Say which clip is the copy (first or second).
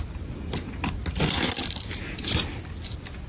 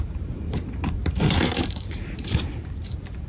second